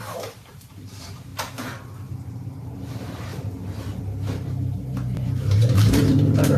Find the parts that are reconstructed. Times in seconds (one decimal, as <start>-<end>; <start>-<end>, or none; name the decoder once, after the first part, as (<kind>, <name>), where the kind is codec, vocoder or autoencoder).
0.0-1.3 (vocoder, BigVGAN v2); 2.3-3.3; 4.0-6.6